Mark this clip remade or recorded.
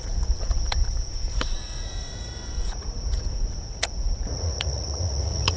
remade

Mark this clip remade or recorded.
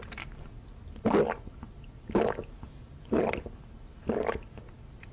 recorded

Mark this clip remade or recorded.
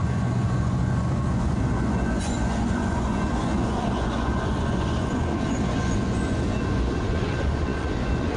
remade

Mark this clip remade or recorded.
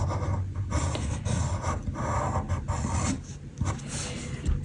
recorded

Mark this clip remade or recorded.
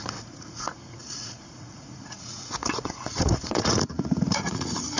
remade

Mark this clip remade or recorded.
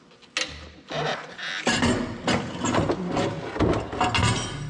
recorded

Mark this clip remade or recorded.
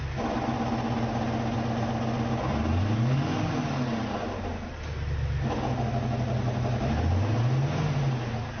recorded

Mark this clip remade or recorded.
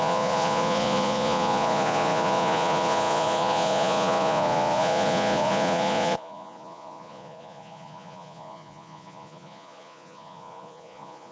remade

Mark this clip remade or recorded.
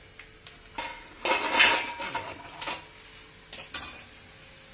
recorded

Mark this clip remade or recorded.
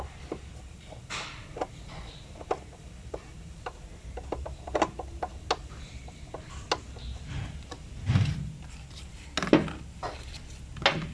recorded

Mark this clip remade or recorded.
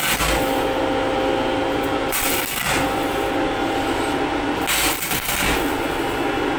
recorded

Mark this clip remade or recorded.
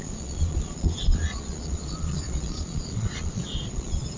remade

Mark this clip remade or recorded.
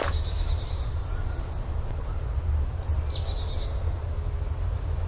recorded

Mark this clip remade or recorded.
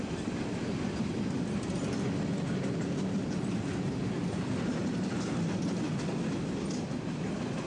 recorded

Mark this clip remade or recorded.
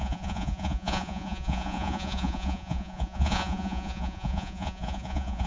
remade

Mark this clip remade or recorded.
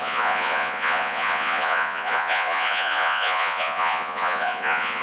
remade